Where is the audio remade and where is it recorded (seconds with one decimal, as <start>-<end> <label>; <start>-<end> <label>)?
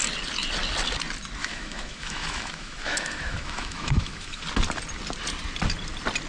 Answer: 0.0-1.4 recorded; 1.4-4.4 remade; 4.4-6.3 recorded